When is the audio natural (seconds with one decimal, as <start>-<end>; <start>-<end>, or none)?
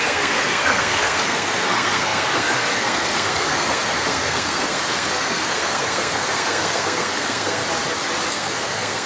7.6-8.3